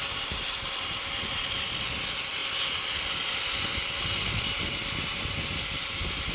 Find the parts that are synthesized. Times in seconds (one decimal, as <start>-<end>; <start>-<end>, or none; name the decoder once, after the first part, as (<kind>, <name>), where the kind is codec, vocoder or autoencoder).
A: none